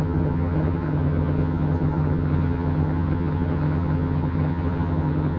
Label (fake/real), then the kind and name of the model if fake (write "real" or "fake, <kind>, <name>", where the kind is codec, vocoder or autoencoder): fake, vocoder, HiFi-GAN